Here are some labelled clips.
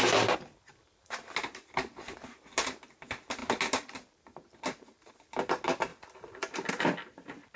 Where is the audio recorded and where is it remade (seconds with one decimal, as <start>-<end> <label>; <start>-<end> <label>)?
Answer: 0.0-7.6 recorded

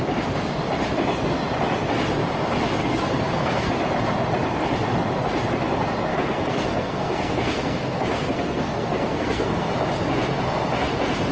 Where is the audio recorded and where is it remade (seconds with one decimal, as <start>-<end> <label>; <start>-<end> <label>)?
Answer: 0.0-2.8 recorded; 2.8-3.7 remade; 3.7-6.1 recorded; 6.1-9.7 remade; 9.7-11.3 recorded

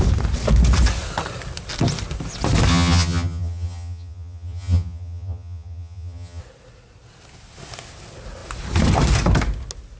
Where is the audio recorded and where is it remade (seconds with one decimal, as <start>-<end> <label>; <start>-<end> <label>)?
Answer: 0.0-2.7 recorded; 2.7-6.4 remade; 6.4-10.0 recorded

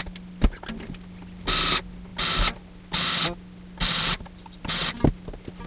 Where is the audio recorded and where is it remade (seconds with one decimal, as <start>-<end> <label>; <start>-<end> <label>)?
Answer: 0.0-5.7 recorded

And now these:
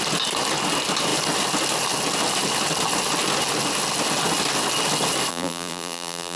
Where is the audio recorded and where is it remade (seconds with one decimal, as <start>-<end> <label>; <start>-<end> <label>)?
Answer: 0.0-5.3 recorded; 5.3-6.4 remade

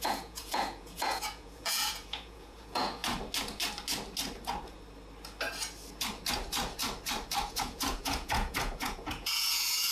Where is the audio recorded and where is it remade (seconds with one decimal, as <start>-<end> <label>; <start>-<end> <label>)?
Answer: 0.0-3.0 remade; 3.0-7.5 recorded; 7.5-9.9 remade

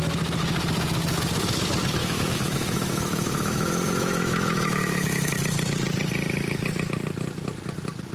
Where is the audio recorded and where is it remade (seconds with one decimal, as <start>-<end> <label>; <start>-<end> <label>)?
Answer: 0.0-2.0 recorded; 2.0-5.3 remade; 5.3-8.1 recorded